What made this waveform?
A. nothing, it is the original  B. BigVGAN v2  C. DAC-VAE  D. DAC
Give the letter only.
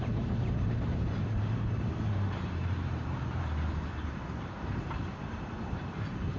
B